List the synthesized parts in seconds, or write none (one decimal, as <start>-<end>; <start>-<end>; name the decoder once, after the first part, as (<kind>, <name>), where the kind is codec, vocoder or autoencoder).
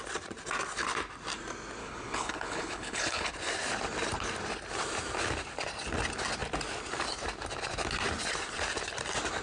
1.8-3.3 (codec, HILCodec)